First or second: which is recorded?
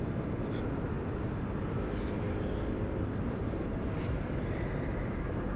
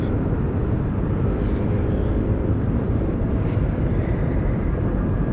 first